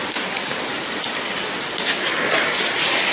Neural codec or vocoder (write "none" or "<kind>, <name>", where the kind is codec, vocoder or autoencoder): none